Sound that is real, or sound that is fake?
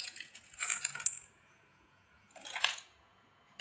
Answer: fake